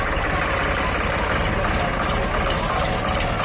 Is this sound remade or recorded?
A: recorded